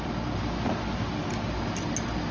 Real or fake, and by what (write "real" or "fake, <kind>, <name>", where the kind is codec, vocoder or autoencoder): real